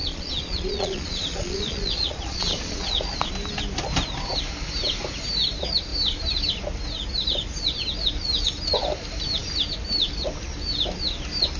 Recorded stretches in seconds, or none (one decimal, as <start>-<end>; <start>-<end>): 3.3-11.6